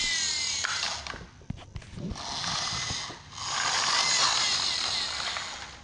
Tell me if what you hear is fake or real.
real